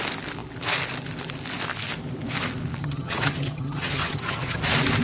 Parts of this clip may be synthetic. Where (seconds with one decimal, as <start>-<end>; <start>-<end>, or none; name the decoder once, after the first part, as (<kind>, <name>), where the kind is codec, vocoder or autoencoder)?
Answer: 2.8-4.6 (vocoder, HiFi-GAN)